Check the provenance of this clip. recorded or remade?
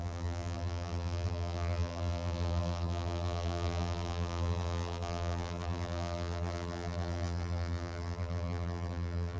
remade